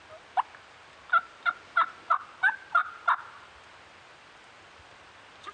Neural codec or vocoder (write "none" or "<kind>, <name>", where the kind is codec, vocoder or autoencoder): none